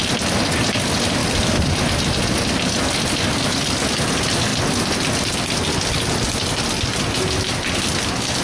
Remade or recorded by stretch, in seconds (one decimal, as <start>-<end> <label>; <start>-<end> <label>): 0.0-8.4 recorded